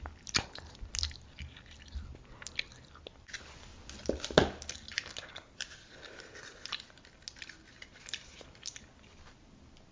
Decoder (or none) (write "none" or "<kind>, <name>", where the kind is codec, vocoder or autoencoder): none